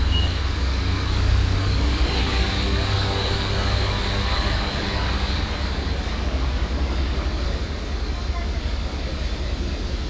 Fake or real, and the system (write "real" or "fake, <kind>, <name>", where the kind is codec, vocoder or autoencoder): fake, codec, DAC